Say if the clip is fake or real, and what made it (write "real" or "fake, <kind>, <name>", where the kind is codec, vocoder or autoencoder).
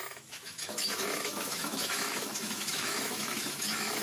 fake, autoencoder, DAC-VAE